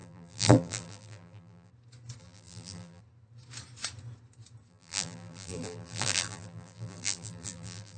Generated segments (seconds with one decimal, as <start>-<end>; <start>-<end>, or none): 0.0-1.7; 2.2-3.0; 4.7-8.0